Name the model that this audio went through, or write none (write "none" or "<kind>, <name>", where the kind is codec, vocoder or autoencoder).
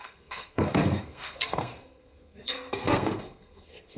codec, SNAC